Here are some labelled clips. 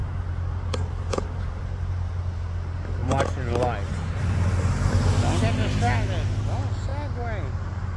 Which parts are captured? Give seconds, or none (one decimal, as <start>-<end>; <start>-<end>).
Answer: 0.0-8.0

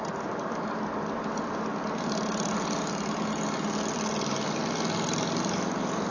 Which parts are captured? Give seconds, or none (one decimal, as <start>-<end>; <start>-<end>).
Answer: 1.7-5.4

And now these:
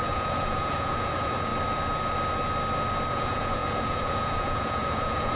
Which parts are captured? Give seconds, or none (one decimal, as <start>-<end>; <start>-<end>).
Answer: 1.5-3.1

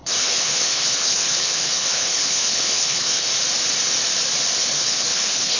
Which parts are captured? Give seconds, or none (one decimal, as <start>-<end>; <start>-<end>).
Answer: 3.3-4.6

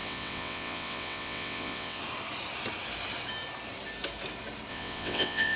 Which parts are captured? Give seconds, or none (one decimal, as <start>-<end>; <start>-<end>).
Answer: 2.0-4.7

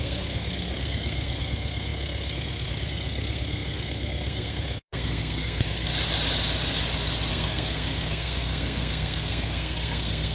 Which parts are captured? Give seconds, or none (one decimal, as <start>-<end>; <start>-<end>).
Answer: 5.9-7.3

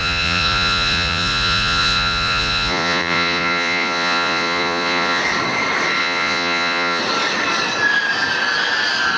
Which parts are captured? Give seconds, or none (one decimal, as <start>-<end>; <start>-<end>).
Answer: 5.2-6.0; 7.0-9.2